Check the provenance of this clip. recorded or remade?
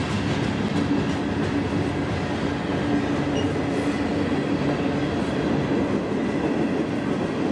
recorded